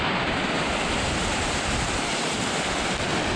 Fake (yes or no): no